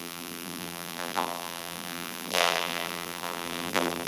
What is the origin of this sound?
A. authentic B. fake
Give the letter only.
B